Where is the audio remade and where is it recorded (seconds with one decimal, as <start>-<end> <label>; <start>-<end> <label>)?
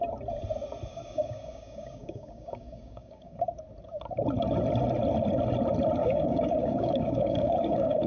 0.0-0.9 recorded; 0.9-3.5 remade; 3.5-6.0 recorded; 6.0-8.1 remade